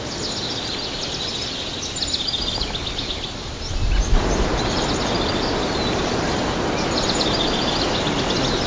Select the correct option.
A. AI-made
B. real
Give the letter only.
B